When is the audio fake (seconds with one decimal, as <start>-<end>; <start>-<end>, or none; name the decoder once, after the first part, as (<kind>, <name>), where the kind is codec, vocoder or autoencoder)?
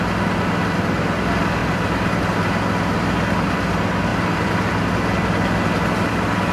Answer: 1.6-2.1 (vocoder, BigVGAN v2); 4.1-4.7